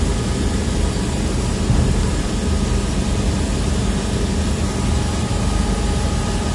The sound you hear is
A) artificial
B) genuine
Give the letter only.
B